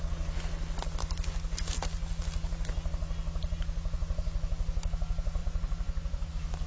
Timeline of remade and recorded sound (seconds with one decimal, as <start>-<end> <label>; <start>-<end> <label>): 0.0-5.4 recorded; 5.4-6.3 remade; 6.3-6.7 recorded